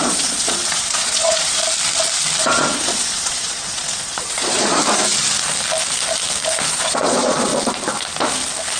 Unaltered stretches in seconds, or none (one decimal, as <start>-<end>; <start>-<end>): 1.6-2.4; 4.8-6.7; 7.5-8.8